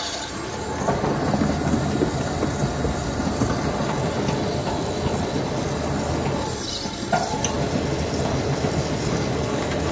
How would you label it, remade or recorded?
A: recorded